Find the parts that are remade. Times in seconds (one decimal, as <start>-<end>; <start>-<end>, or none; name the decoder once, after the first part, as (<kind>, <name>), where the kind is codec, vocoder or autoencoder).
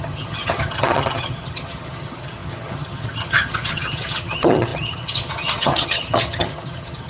0.0-7.1 (vocoder, HiFi-GAN)